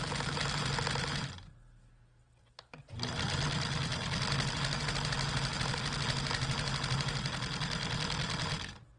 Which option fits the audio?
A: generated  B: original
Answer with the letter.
B